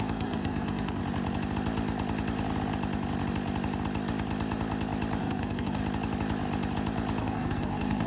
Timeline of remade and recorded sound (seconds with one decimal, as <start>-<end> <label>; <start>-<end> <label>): 0.0-1.0 remade; 1.0-5.2 recorded; 5.2-5.8 remade; 5.8-7.2 recorded; 7.2-8.1 remade